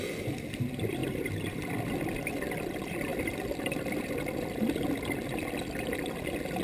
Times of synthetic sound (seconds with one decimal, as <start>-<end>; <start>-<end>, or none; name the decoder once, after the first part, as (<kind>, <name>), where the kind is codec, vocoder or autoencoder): none